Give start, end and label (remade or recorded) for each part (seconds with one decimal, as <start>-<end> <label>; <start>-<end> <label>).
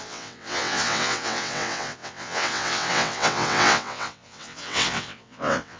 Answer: 0.0-5.8 remade